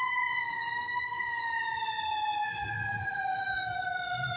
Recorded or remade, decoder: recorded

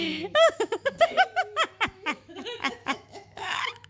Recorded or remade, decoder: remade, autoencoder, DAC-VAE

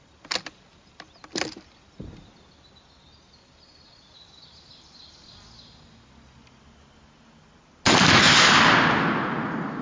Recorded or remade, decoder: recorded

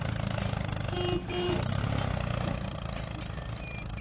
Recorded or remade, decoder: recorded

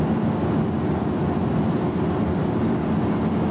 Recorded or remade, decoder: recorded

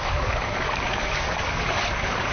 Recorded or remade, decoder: remade, codec, DAC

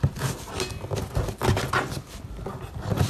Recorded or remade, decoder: recorded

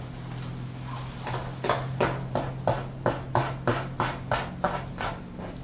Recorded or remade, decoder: recorded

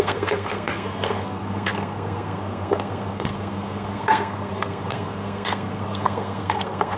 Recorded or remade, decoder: remade, codec, SNAC